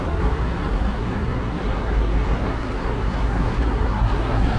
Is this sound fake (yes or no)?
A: yes